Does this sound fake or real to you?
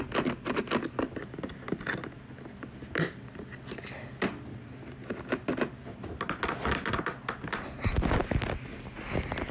real